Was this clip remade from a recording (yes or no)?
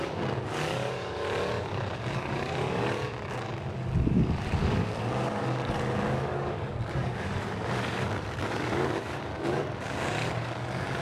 yes